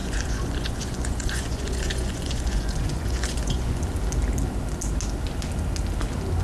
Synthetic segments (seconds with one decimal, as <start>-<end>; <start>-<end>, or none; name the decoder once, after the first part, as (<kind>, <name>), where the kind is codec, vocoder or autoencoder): 0.0-3.8 (vocoder, Vocos)